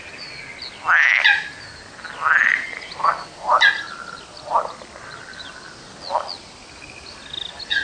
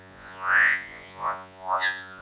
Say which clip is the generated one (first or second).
second